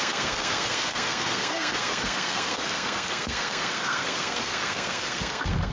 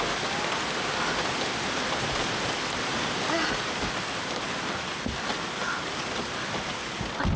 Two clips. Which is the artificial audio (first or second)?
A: first